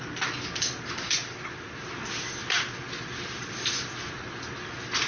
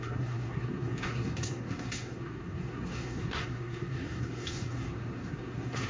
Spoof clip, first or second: second